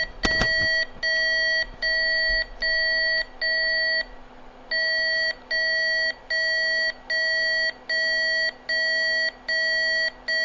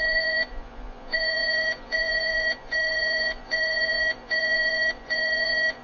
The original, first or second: first